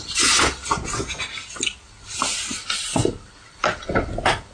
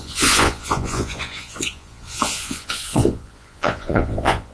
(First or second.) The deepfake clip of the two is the second